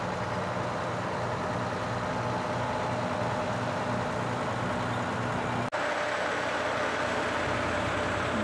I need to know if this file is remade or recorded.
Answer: recorded